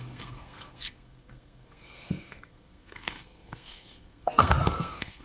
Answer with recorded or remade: remade